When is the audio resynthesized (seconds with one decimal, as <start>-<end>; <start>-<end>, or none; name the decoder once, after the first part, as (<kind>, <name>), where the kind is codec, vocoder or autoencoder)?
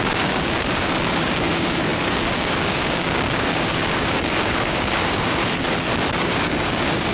0.0-5.4 (codec, DAC); 6.2-7.1